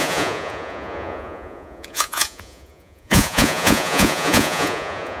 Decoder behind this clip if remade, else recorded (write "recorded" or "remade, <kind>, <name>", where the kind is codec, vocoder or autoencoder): remade, vocoder, Vocos